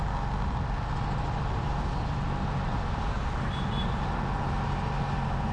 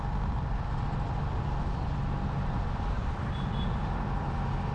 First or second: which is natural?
first